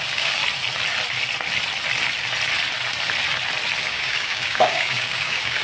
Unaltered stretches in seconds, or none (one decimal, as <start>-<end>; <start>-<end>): 0.4-3.8